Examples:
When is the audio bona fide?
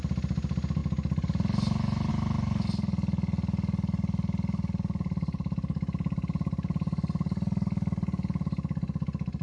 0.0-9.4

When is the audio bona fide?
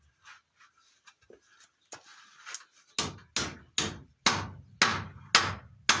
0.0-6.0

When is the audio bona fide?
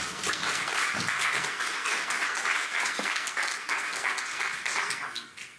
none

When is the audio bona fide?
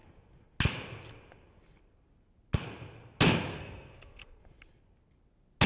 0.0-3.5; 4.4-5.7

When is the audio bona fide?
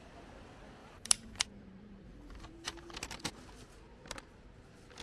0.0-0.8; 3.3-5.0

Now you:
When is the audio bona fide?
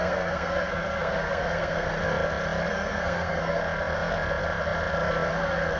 2.0-2.7; 3.6-5.3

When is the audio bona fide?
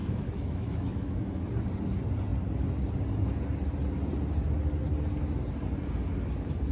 1.4-6.7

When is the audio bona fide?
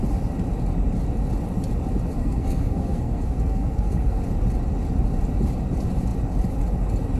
0.0-2.2; 4.2-7.2